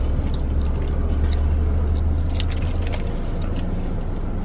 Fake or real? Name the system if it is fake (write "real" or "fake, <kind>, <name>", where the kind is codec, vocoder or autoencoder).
real